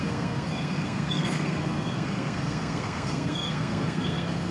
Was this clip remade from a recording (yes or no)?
yes